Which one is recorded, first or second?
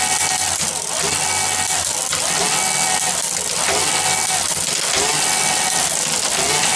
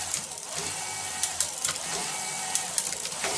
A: first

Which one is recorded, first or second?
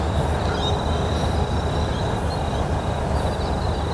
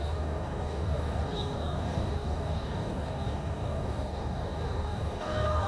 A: first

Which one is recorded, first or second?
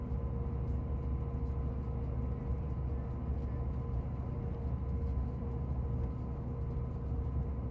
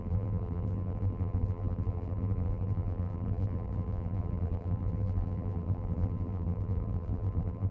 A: first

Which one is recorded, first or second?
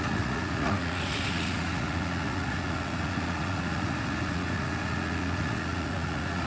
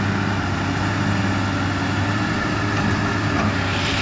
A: second